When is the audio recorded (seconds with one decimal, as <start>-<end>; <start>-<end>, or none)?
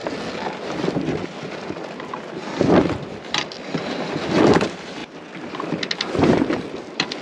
0.0-2.8; 5.0-6.1